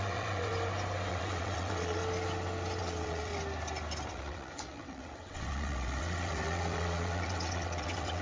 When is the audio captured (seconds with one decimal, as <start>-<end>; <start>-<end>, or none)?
0.5-1.1; 2.0-2.8; 3.3-4.1